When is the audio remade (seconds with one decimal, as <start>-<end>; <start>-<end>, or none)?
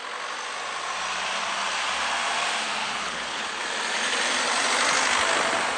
2.8-3.6